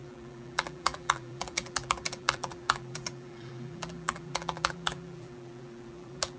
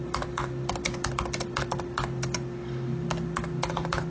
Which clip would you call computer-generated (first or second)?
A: first